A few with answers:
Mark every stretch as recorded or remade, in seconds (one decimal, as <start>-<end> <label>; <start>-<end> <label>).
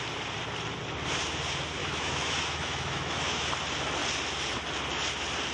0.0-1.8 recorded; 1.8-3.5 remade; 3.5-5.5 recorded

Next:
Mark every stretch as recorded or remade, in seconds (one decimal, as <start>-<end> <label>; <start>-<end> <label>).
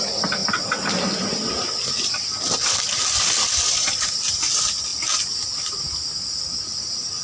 0.0-7.2 recorded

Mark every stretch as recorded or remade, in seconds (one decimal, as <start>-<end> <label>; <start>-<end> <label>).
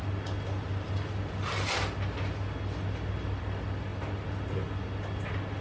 0.0-5.6 recorded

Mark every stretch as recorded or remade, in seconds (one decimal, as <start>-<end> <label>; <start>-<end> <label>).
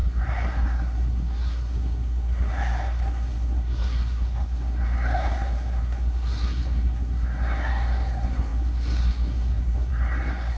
0.0-10.6 remade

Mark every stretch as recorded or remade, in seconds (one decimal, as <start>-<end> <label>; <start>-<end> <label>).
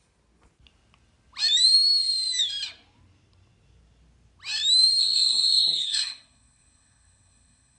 0.0-5.0 recorded; 5.0-7.8 remade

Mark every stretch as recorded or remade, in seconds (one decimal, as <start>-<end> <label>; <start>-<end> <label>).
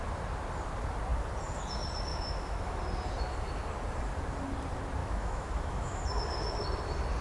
0.0-2.1 recorded; 2.1-2.8 remade; 2.8-5.0 recorded; 5.0-6.0 remade; 6.0-7.2 recorded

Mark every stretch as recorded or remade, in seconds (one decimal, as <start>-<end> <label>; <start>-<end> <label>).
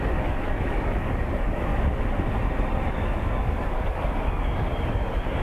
0.0-1.7 remade; 1.7-2.9 recorded; 2.9-5.4 remade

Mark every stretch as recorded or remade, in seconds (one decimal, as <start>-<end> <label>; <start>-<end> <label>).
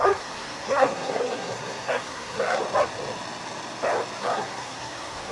0.0-2.6 remade; 2.6-4.2 recorded; 4.2-5.3 remade